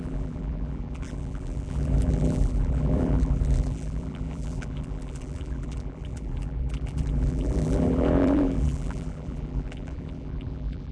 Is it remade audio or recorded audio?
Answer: remade